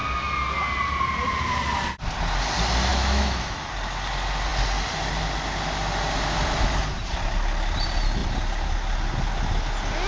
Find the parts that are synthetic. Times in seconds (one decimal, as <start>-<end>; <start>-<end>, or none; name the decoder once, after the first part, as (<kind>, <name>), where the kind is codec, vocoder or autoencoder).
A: 2.9-3.7 (autoencoder, DAC-VAE)